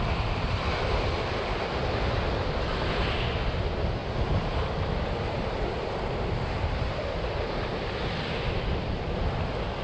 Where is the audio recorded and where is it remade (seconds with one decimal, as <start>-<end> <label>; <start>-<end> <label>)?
0.0-9.8 recorded